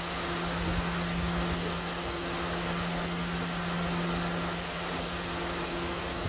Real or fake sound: real